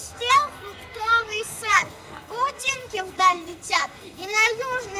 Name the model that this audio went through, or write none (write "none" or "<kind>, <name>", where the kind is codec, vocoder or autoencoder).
codec, SNAC